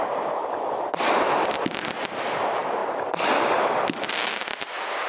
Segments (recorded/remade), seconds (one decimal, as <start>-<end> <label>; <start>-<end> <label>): 0.0-5.1 recorded